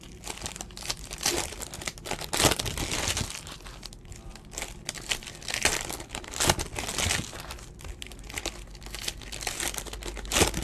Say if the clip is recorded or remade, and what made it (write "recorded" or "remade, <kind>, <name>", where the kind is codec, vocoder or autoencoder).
recorded